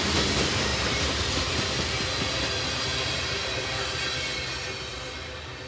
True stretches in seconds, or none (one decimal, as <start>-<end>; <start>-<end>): 0.0-0.7; 1.2-5.7